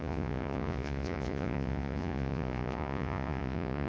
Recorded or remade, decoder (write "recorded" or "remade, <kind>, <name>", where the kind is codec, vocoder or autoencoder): remade, vocoder, Vocos